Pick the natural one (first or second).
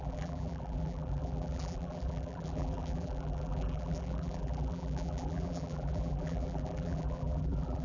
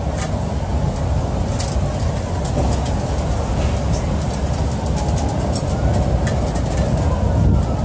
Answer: second